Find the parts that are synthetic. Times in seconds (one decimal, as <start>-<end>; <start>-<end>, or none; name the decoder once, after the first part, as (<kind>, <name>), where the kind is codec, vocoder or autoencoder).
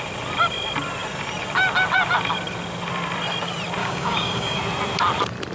3.8-4.6 (codec, DAC)